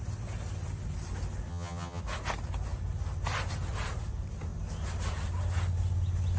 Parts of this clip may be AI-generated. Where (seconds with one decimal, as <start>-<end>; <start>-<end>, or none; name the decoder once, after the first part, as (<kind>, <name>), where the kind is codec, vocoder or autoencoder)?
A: 1.5-2.0 (vocoder, HiFi-GAN)